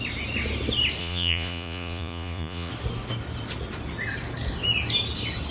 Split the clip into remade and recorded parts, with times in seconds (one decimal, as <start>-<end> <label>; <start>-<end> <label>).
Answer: 0.0-1.0 recorded; 1.0-2.7 remade; 2.7-5.5 recorded